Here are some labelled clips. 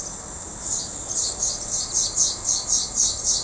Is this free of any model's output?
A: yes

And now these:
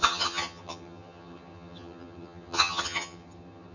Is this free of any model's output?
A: no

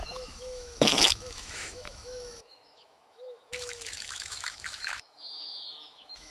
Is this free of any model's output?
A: no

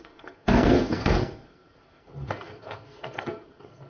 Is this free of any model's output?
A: no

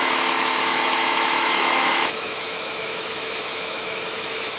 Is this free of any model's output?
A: no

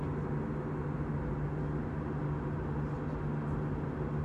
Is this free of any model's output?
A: yes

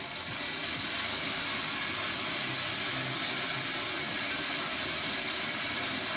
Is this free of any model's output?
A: yes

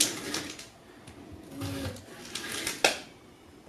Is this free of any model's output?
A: yes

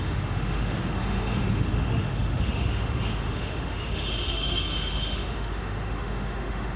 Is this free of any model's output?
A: no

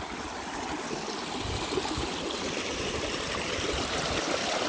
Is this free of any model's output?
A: yes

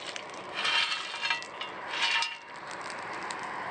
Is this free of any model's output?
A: yes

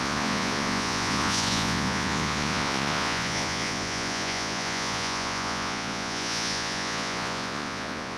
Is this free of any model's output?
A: no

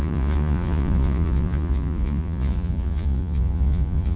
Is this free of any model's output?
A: no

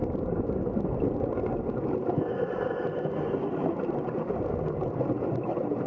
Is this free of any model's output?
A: yes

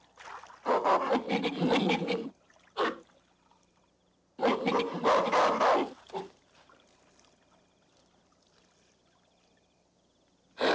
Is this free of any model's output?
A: yes